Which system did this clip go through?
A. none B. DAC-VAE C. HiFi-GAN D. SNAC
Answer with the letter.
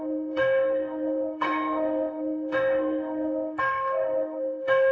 B